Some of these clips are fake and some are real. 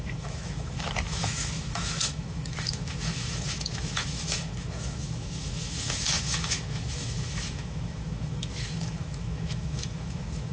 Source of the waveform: fake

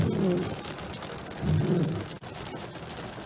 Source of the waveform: real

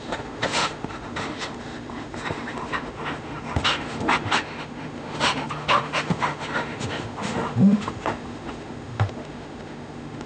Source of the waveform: fake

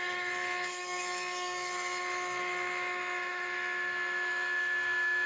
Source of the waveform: fake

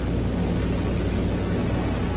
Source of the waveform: real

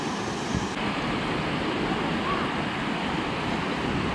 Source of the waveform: real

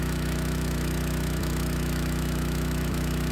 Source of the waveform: fake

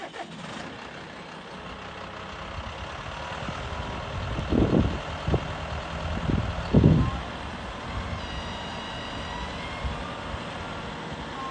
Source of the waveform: real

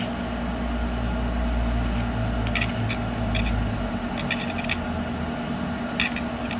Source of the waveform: real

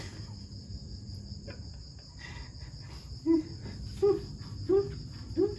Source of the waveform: real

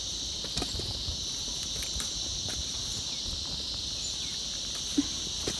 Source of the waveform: real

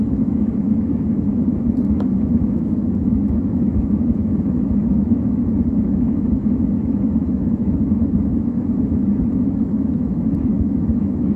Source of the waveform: fake